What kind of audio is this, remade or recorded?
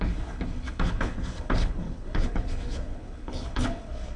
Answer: remade